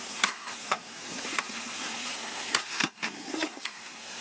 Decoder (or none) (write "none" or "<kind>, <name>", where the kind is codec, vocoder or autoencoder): codec, SNAC